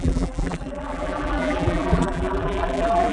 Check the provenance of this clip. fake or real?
fake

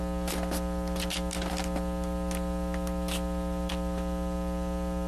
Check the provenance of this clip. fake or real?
real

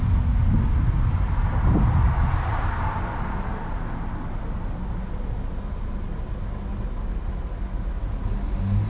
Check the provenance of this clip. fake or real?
real